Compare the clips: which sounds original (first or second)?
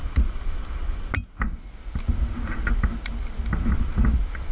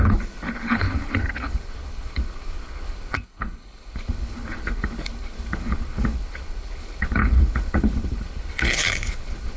first